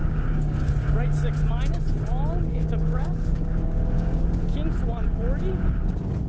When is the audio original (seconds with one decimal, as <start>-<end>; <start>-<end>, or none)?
0.7-2.5; 4.2-6.3